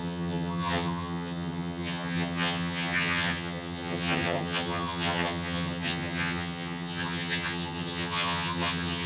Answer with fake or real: fake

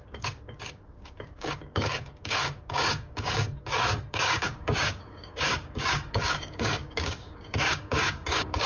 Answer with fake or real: fake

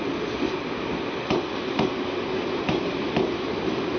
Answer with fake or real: real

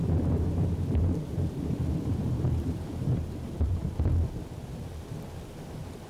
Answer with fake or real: fake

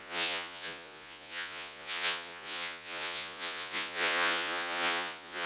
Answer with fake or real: fake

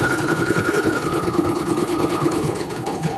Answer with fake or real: fake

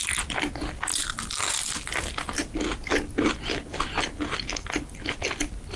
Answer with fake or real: real